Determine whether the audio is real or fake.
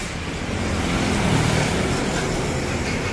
real